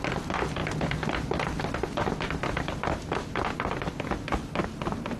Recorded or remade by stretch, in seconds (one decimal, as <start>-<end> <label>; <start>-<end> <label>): 0.0-5.2 recorded